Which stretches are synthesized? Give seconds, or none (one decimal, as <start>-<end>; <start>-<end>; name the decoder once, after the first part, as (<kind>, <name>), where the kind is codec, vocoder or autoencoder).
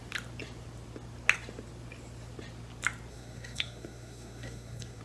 3.1-5.0 (codec, SNAC)